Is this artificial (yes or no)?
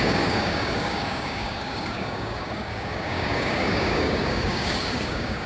yes